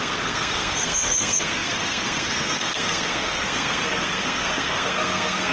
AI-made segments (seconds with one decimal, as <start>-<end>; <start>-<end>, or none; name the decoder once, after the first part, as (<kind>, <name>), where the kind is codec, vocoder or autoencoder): 0.0-5.5 (codec, SNAC)